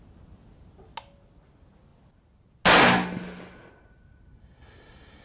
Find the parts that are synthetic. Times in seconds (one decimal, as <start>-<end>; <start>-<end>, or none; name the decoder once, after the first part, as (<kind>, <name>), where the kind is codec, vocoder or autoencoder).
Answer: none